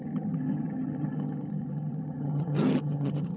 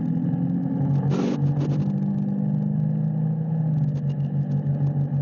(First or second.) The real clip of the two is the second